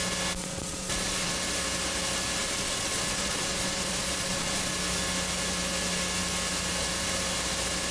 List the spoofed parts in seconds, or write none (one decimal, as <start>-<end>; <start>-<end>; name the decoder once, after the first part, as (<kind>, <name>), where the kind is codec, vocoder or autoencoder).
0.4-1.3 (vocoder, Vocos); 2.4-4.7